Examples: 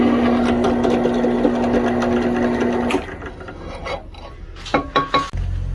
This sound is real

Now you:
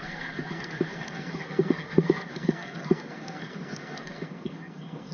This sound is fake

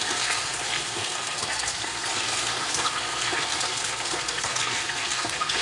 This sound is fake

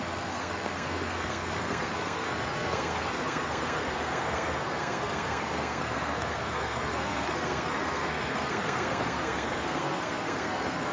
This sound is fake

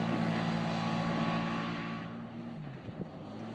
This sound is real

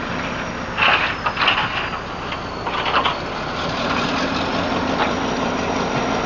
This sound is real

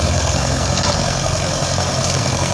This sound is fake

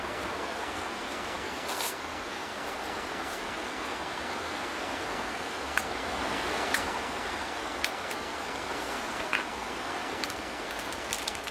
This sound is fake